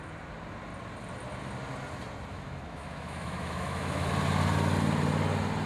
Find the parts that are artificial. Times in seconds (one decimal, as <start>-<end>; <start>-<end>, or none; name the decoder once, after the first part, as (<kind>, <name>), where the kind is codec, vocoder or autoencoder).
2.3-4.1 (autoencoder, DAC-VAE)